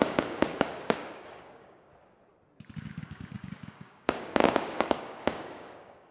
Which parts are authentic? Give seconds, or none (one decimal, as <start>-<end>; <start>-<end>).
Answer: 1.9-2.8